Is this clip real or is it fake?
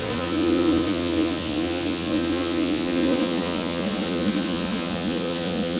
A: fake